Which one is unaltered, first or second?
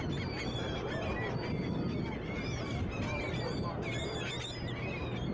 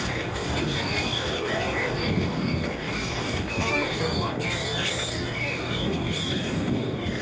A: first